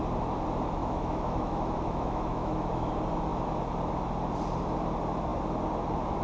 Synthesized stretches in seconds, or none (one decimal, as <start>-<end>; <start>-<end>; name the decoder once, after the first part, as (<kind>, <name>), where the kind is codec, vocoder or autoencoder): 0.8-2.9 (autoencoder, DAC-VAE)